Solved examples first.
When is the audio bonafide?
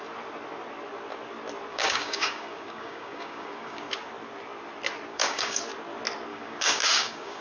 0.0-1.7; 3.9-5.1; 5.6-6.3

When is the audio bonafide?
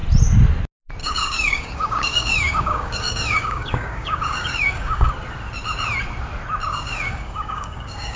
0.0-1.0; 5.1-6.7